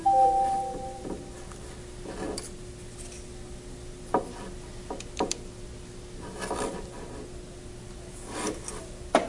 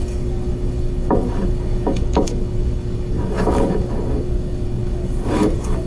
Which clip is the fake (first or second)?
second